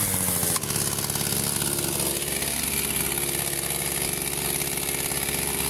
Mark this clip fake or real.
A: real